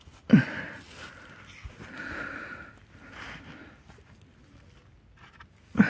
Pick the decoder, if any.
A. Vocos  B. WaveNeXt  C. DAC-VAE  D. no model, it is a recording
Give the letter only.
D